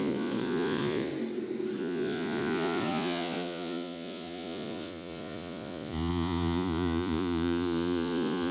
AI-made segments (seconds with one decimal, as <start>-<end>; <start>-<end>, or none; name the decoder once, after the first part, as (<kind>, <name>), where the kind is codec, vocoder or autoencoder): 0.0-1.1 (vocoder, Vocos); 1.8-8.5